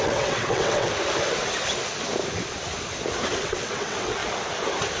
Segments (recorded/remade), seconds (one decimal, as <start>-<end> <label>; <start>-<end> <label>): 0.0-0.9 remade; 0.9-3.3 recorded; 3.3-4.2 remade; 4.2-5.0 recorded